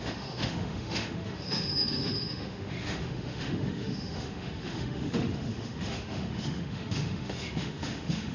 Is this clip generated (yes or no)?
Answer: yes